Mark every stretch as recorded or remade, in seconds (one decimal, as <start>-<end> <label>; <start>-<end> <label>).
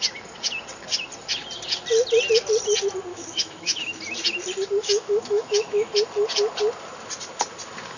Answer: 0.0-3.1 recorded; 3.1-4.0 remade; 4.0-4.8 recorded; 4.8-5.9 remade; 5.9-8.0 recorded